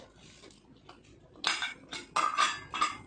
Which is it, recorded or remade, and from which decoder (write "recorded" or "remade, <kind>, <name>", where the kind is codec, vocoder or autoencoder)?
recorded